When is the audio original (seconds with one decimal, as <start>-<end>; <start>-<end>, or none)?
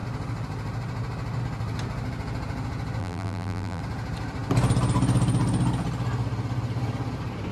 0.0-3.0; 3.8-7.5